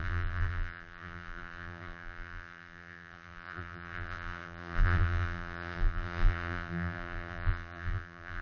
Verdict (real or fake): fake